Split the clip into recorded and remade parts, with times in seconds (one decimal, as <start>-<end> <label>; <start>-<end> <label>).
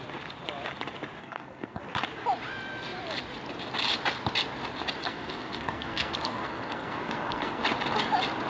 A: 0.0-1.2 recorded; 1.2-1.8 remade; 1.8-5.0 recorded; 5.0-7.6 remade; 7.6-8.5 recorded